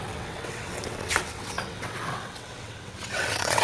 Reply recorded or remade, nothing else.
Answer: remade